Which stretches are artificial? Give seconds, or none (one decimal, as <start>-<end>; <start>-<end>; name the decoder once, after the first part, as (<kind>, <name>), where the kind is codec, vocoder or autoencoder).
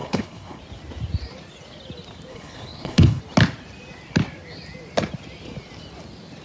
0.0-0.6 (codec, HILCodec); 2.3-3.2